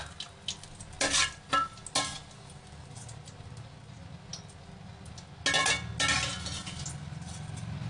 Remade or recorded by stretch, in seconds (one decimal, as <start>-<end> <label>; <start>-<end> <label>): 0.0-7.9 recorded